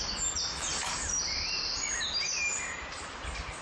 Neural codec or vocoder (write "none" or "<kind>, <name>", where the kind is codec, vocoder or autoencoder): none